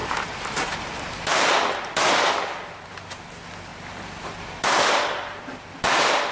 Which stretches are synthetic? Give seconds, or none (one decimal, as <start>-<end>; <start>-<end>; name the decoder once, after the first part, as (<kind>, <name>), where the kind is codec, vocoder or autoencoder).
0.0-1.5 (vocoder, BigVGAN v2); 3.7-5.4